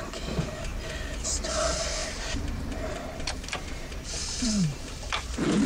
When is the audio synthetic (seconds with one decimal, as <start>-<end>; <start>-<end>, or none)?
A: 2.0-5.1